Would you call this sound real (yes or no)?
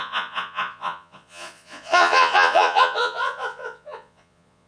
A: no